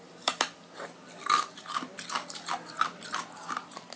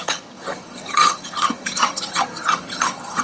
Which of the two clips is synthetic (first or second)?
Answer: second